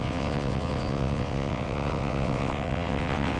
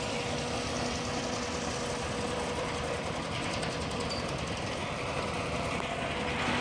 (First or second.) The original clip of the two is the second